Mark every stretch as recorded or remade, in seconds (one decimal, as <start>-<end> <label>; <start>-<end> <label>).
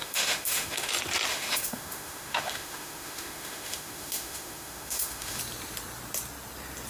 0.0-0.9 remade; 0.9-1.3 recorded; 1.3-5.4 remade; 5.4-6.9 recorded